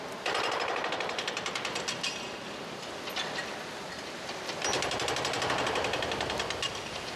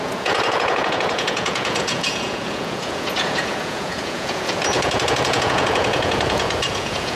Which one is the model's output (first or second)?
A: second